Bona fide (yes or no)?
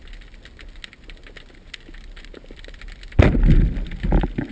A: yes